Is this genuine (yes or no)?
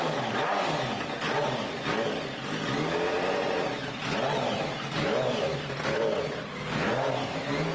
yes